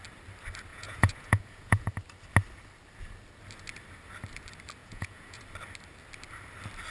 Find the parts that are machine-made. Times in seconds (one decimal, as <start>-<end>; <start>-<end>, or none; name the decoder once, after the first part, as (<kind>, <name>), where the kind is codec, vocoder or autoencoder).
0.7-1.9 (vocoder, Vocos); 4.8-5.4